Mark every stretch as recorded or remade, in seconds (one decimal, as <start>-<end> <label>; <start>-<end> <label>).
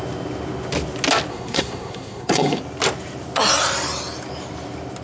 0.0-1.3 recorded; 1.3-2.6 remade; 2.6-5.0 recorded